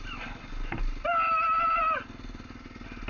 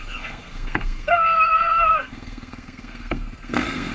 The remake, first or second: second